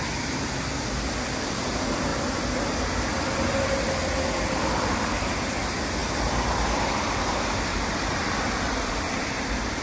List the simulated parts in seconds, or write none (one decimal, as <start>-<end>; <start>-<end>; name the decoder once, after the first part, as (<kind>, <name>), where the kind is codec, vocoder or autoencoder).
0.0-2.1 (vocoder, BigVGAN v2); 4.6-9.8